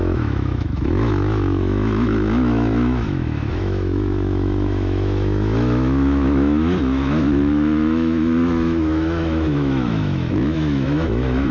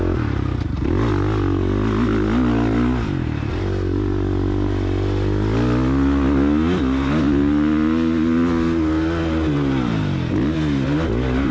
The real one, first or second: second